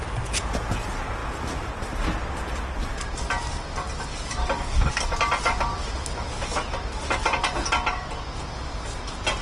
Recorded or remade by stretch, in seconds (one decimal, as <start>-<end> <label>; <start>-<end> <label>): 0.0-4.4 recorded; 4.4-4.9 remade; 4.9-9.4 recorded